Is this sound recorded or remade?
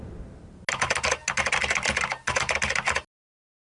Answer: recorded